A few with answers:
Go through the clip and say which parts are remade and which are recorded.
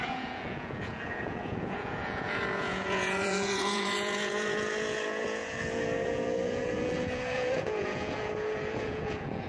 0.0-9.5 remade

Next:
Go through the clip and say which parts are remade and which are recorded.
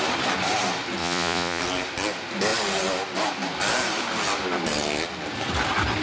0.0-1.0 recorded; 1.0-1.6 remade; 1.6-6.0 recorded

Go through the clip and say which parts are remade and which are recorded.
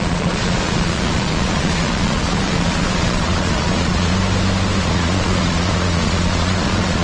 0.0-4.1 remade; 4.1-4.8 recorded; 4.8-7.0 remade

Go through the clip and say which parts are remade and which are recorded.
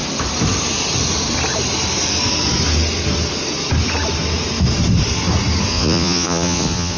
0.0-5.7 recorded; 5.7-7.0 remade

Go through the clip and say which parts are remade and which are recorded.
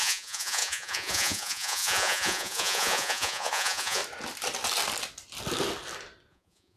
0.0-4.0 remade; 4.0-6.3 recorded; 6.3-6.8 remade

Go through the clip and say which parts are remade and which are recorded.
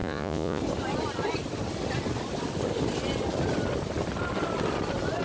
0.0-0.6 remade; 0.6-5.2 recorded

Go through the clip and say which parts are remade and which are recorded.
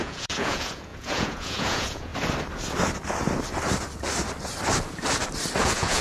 0.0-2.1 remade; 2.1-5.6 recorded; 5.6-6.0 remade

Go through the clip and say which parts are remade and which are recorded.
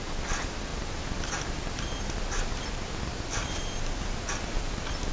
0.0-5.1 recorded